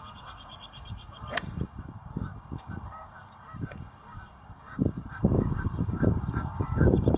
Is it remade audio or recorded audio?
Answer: remade